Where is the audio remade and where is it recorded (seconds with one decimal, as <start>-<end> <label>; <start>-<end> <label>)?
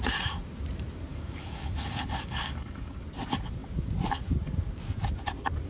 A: 0.0-1.1 recorded; 1.1-3.0 remade; 3.0-5.7 recorded